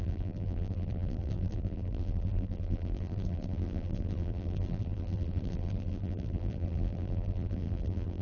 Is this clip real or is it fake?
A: fake